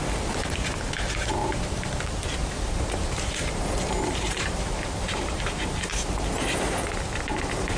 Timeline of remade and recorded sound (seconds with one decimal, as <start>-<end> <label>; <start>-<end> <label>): 0.0-1.4 recorded; 1.4-1.9 remade; 1.9-2.4 recorded; 2.4-6.2 remade; 6.2-7.8 recorded